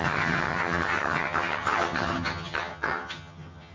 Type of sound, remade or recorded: remade